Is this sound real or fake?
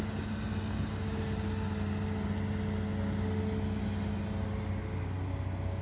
real